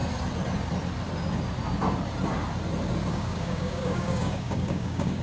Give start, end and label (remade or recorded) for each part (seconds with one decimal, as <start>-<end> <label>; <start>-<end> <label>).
0.0-3.1 recorded; 3.1-5.2 remade